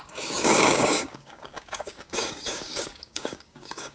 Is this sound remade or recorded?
remade